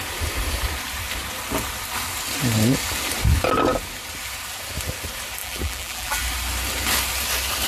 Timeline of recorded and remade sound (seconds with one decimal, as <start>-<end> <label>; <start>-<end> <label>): 0.0-5.4 recorded; 5.4-6.2 remade; 6.2-7.7 recorded